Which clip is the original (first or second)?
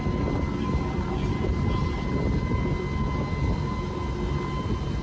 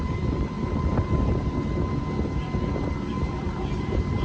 first